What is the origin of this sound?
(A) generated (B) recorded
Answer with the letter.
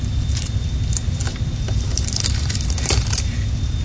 B